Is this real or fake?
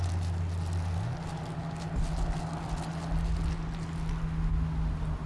real